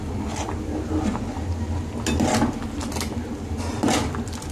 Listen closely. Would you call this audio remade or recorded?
recorded